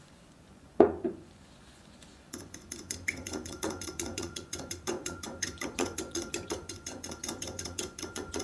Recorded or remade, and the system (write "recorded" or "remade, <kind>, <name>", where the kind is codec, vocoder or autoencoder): remade, vocoder, Vocos